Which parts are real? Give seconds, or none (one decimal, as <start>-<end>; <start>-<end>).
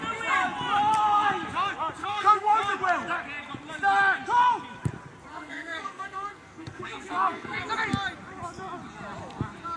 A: 0.0-2.0; 2.5-5.3; 7.6-9.8